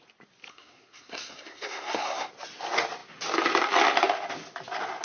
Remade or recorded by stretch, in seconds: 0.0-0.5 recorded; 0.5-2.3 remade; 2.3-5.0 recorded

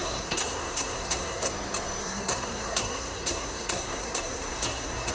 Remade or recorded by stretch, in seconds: 0.0-1.5 remade; 1.5-2.0 recorded; 2.0-5.1 remade

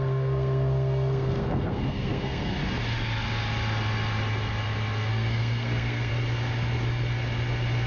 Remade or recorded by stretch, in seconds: 0.0-2.6 remade; 2.6-5.1 recorded; 5.1-6.1 remade; 6.1-7.9 recorded

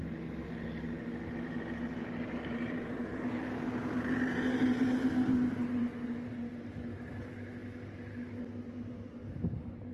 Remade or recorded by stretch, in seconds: 0.0-9.9 recorded

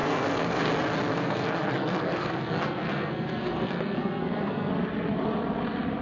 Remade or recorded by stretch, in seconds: 0.0-0.7 remade; 0.7-1.1 recorded; 1.1-4.7 remade; 4.7-6.0 recorded

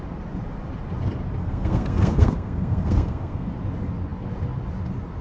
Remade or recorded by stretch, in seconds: 0.0-1.4 recorded; 1.4-3.5 remade; 3.5-5.2 recorded

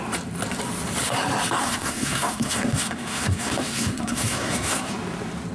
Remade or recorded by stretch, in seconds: 0.0-1.6 recorded; 1.6-4.9 remade; 4.9-5.5 recorded